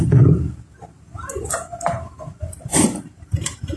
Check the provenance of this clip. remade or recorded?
recorded